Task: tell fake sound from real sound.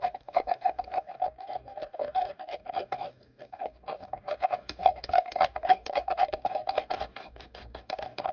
fake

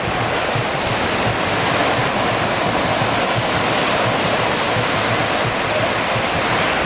real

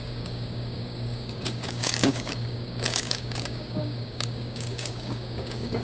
fake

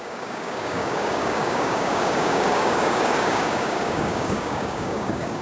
fake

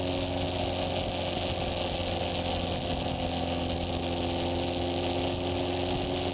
real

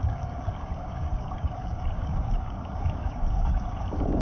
fake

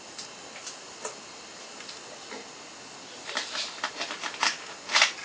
real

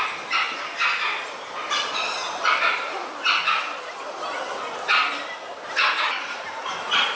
real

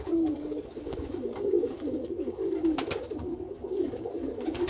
fake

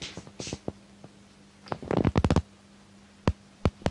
real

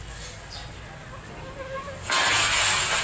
real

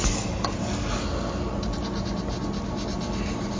real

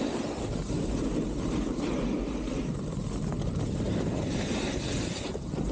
real